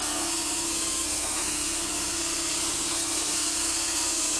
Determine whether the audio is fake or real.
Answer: fake